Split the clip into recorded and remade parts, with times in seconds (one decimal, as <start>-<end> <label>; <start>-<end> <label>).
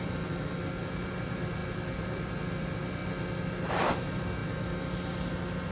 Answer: 0.0-3.0 remade; 3.0-3.7 recorded; 3.7-4.4 remade; 4.4-5.7 recorded